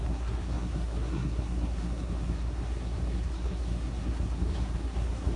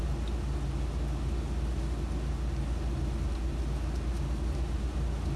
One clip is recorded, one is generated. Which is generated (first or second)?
first